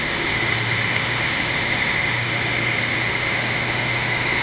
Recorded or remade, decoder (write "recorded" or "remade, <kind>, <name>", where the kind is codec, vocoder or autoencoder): remade, autoencoder, DAC-VAE